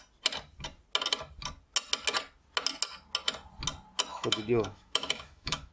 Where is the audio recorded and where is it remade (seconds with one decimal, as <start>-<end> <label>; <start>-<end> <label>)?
0.0-4.1 recorded; 4.1-5.7 remade